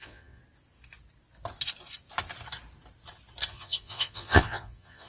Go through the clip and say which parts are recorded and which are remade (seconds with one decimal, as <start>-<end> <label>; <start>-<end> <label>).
0.0-0.4 remade; 0.4-3.5 recorded; 3.5-5.1 remade